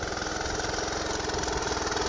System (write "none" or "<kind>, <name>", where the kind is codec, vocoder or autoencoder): none